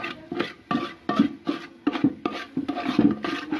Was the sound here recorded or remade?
recorded